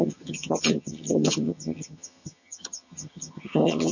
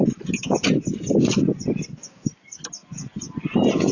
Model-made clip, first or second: first